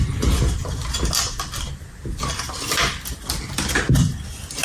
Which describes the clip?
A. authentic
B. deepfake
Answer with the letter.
A